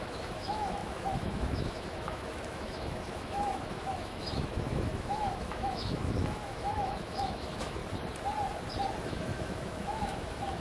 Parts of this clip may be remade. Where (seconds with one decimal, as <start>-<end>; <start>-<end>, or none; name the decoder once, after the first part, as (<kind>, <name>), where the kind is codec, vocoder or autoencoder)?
0.0-7.8 (autoencoder, DAC-VAE); 9.0-10.6